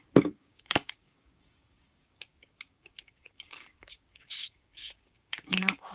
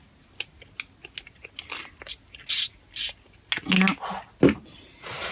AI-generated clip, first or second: first